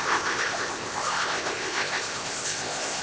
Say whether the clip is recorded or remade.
remade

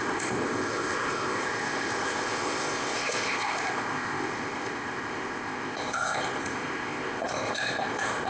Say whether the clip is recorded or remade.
remade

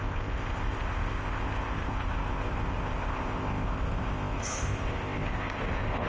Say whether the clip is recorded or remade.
remade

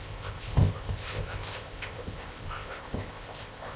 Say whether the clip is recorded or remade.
remade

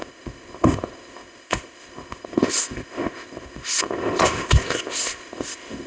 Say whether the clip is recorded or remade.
remade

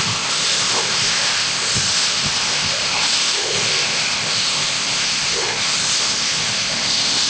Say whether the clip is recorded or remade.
remade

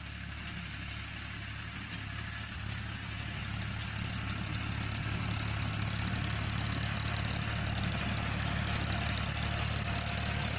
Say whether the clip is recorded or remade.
recorded